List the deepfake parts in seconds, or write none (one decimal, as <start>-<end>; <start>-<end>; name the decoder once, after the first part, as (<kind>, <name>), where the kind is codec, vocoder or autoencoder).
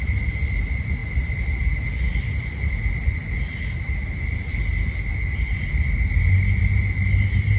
none